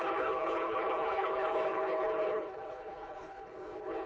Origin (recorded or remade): remade